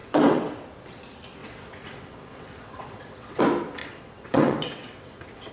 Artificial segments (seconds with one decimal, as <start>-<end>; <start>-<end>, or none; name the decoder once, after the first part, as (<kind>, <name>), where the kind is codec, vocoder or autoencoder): 0.0-0.6 (vocoder, WaveNeXt); 1.4-3.4; 3.8-5.5